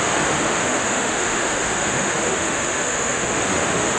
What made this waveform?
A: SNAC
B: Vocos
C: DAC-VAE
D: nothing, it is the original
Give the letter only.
C